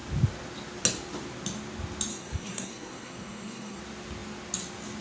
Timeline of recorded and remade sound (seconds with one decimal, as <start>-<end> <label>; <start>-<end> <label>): 0.0-2.1 recorded; 2.1-3.8 remade; 3.8-5.0 recorded